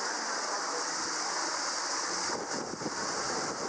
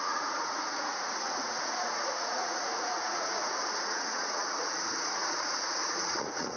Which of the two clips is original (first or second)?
first